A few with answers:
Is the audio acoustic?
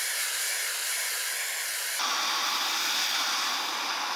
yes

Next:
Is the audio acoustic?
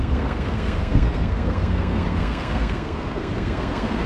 no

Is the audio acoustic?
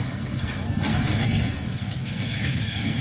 no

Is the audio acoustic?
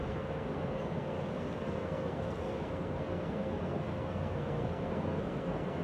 no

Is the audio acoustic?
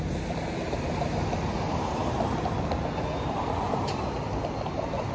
yes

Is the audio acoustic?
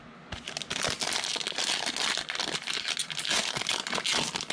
yes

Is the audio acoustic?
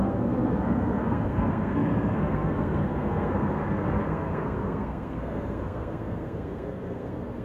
no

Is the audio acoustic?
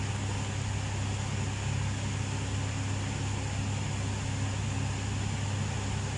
yes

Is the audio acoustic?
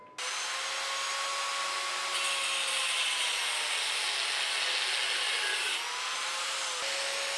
yes